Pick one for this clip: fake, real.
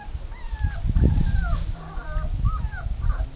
real